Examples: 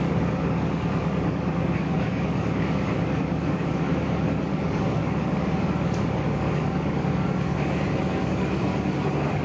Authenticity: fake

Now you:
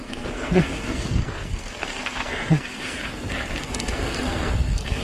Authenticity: fake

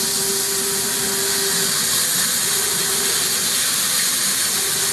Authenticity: real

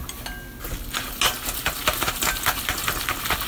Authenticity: real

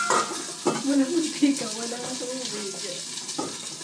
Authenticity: real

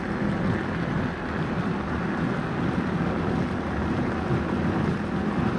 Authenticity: real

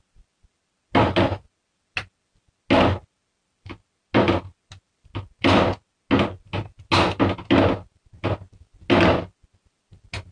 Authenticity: real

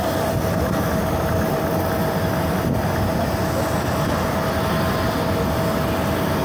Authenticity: real